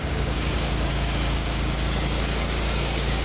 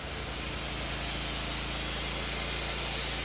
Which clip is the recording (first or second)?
second